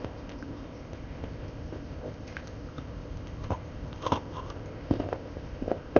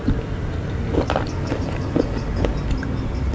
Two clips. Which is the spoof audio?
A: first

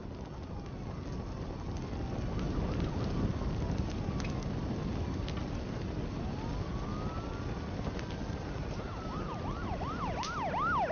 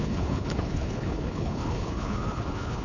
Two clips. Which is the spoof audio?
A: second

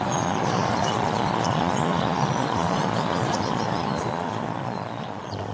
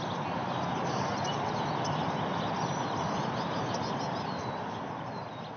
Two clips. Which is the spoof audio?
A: first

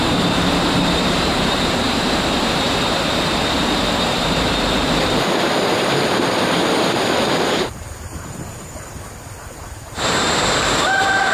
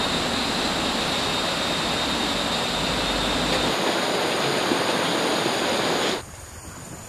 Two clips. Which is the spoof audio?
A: first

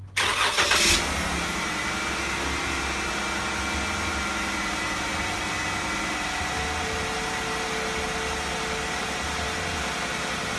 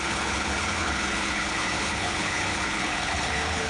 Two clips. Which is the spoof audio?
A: second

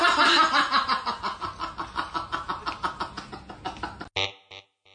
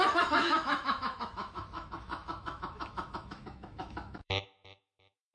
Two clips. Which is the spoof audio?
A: second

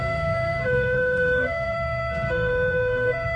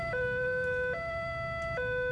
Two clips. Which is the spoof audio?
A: first